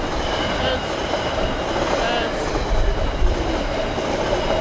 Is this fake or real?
real